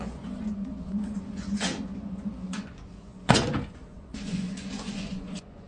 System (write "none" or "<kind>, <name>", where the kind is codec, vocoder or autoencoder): vocoder, Vocos